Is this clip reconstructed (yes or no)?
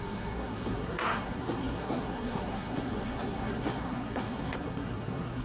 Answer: yes